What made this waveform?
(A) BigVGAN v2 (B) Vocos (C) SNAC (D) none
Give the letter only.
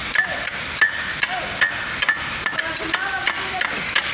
D